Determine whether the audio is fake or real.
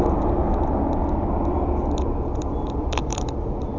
real